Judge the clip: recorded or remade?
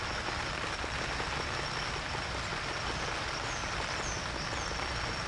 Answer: recorded